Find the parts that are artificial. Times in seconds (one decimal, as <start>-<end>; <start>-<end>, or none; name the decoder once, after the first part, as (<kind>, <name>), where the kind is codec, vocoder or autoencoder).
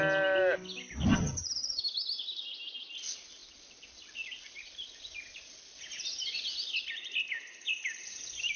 1.1-1.8 (vocoder, HiFi-GAN)